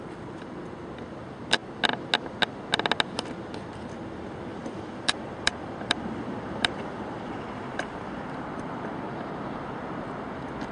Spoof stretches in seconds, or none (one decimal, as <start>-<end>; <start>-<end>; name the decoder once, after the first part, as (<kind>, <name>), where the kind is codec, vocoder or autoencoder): 4.5-9.1 (vocoder, BigVGAN v2)